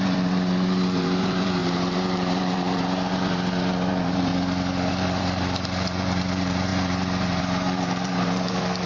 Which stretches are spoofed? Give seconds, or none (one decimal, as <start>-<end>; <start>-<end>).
0.0-4.3; 4.9-8.9